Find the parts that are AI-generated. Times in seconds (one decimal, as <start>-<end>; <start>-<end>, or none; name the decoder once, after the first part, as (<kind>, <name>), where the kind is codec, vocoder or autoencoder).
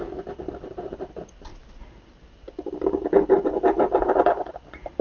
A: none